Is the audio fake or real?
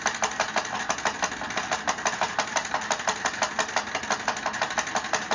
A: real